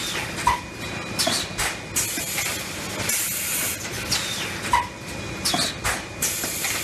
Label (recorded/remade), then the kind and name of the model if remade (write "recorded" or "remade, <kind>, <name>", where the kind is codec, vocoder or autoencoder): recorded